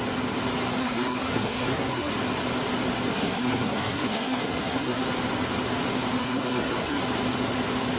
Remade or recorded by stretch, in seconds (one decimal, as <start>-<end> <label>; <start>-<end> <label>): 0.0-0.8 recorded; 0.8-2.1 remade; 2.1-3.1 recorded; 3.1-5.0 remade; 5.0-6.2 recorded; 6.2-7.0 remade; 7.0-8.0 recorded